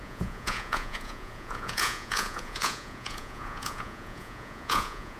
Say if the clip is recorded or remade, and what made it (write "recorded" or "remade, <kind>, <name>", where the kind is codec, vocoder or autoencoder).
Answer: remade, vocoder, Vocos